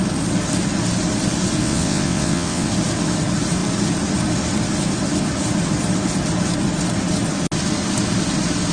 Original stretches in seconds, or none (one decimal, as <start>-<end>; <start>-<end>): 0.0-1.6; 2.7-8.7